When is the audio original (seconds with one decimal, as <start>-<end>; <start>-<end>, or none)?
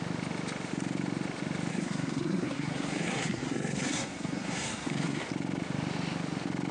0.0-1.7; 5.2-6.7